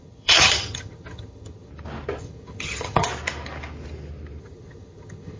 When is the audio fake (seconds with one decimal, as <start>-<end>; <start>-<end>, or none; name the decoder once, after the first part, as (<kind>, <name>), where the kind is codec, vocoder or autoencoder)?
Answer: 0.0-1.7 (vocoder, HiFi-GAN); 2.2-3.1; 4.4-5.4